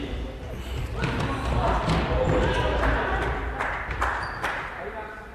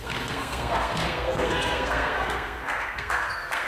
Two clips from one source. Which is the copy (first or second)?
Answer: second